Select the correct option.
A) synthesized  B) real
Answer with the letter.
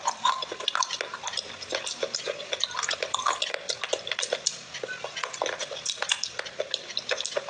B